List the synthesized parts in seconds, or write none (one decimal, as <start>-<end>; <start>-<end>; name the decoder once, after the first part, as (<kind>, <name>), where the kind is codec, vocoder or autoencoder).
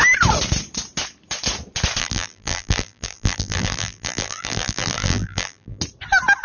2.0-5.8 (vocoder, BigVGAN v2)